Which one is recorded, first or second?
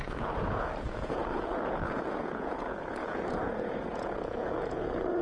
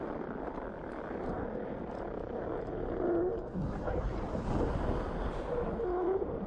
second